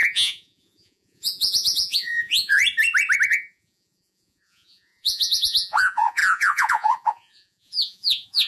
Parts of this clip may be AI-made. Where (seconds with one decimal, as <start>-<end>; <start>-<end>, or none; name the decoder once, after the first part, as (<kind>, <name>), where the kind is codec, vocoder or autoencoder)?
0.0-2.6 (vocoder, Vocos); 3.3-8.5